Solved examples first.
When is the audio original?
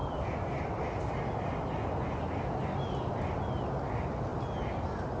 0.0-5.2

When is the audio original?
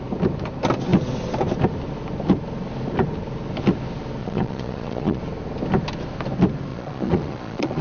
0.0-4.2; 5.2-6.7